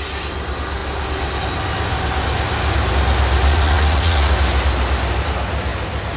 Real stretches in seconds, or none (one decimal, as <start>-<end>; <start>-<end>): 0.0-3.5; 4.3-6.2